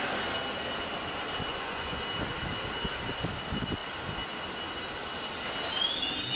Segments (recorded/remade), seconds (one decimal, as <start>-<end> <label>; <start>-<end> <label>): 0.0-1.5 recorded; 1.5-2.0 remade; 2.0-6.4 recorded